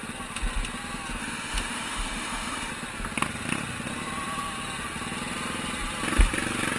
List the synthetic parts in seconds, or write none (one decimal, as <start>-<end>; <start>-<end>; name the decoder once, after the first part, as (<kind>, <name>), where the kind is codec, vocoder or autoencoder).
1.2-2.7 (autoencoder, DAC-VAE)